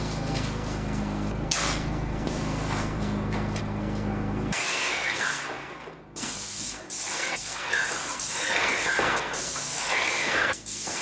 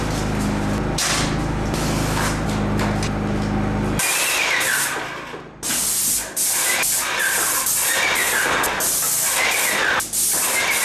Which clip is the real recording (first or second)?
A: second